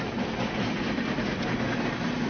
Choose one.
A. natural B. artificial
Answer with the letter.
A